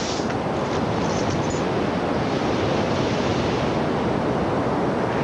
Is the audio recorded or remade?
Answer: recorded